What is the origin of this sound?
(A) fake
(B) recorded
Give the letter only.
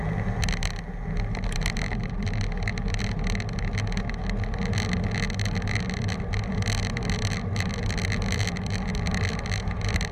B